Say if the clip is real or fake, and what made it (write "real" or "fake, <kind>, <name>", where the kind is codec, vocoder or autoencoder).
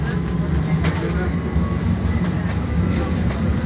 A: real